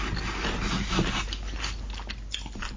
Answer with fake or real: real